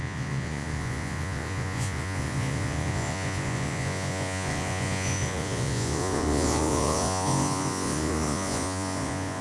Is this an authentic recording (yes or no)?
no